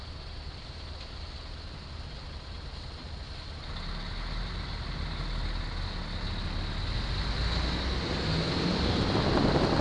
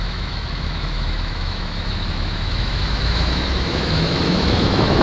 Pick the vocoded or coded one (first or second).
second